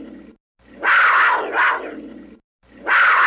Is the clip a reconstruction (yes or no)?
no